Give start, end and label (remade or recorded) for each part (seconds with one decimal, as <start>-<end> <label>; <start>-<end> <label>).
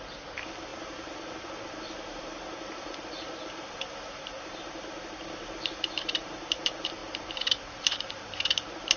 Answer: 0.0-9.0 remade